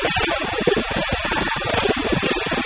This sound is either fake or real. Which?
real